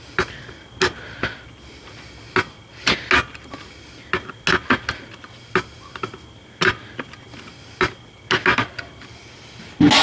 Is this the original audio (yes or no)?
yes